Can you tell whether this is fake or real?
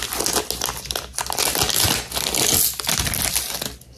real